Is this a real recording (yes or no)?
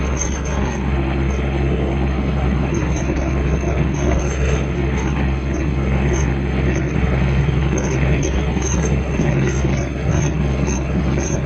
no